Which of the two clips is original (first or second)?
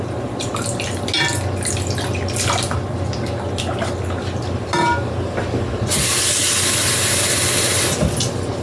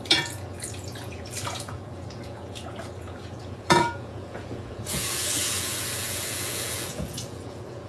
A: first